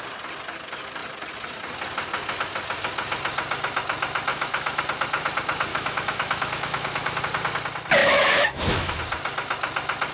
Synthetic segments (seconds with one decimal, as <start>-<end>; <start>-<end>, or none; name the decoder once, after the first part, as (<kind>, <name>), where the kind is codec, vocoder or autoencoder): 4.3-4.8 (autoencoder, DAC-VAE); 5.7-7.2; 8.0-9.0